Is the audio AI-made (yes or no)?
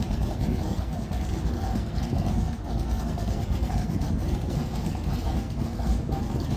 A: yes